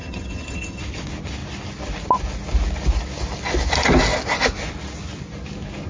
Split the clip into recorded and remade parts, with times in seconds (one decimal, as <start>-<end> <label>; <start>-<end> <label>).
0.0-0.8 remade; 0.8-5.9 recorded